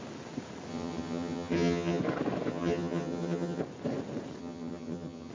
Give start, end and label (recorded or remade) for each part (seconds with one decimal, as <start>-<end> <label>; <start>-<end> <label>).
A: 0.0-0.7 recorded; 0.7-2.0 remade; 2.0-2.5 recorded; 2.5-3.6 remade; 3.6-4.4 recorded; 4.4-5.3 remade

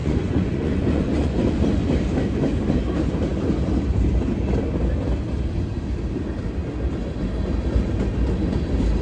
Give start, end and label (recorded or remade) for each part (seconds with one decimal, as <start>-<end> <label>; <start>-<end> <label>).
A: 0.0-1.6 remade; 1.6-9.0 recorded

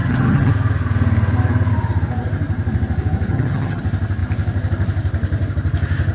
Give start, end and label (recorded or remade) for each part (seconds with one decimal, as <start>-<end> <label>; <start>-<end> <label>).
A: 0.0-0.5 remade; 0.5-3.3 recorded; 3.3-3.8 remade; 3.8-6.1 recorded

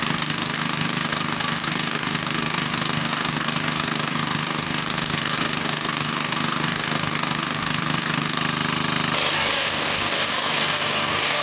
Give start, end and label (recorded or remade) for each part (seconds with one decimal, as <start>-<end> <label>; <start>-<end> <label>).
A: 0.0-8.4 remade; 8.4-9.3 recorded; 9.3-11.4 remade

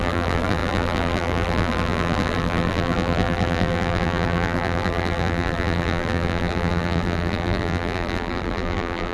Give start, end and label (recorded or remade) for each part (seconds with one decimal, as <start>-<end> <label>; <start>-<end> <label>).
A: 0.0-9.1 remade

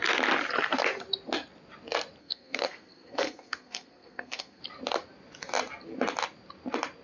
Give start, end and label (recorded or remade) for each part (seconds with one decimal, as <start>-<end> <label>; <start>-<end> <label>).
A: 0.0-2.2 recorded; 2.2-4.6 remade; 4.6-7.0 recorded

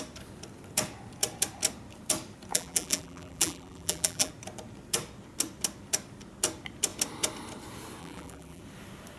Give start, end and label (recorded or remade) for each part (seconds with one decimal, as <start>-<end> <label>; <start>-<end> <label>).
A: 0.0-2.5 recorded; 2.5-4.3 remade; 4.3-8.0 recorded; 8.0-8.6 remade; 8.6-9.2 recorded